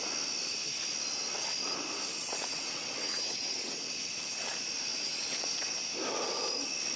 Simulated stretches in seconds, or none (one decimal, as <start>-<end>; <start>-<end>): 2.2-4.1; 4.9-5.8